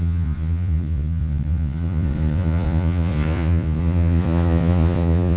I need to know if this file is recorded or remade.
remade